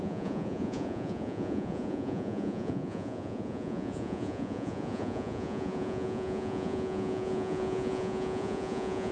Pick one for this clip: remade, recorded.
remade